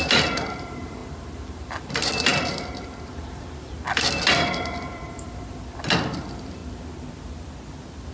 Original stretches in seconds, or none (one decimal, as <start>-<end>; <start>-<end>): 6.6-8.1